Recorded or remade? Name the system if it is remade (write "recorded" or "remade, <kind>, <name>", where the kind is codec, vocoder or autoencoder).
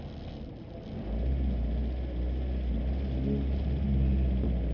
recorded